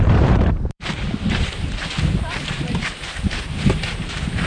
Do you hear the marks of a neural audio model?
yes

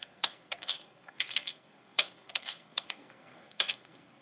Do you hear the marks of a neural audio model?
yes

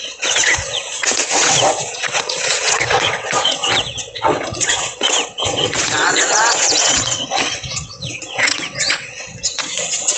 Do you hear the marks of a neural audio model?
yes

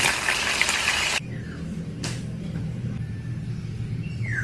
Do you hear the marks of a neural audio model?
no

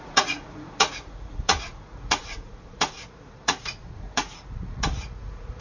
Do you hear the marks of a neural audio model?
yes